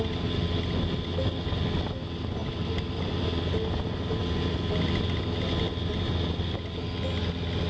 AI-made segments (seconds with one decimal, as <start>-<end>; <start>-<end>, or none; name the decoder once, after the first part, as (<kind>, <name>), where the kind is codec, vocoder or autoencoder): none